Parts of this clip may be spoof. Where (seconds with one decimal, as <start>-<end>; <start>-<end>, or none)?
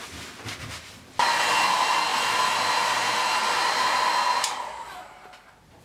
none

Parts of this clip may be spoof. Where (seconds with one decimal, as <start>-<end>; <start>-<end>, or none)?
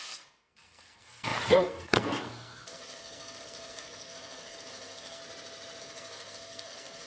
0.0-5.2; 5.8-7.1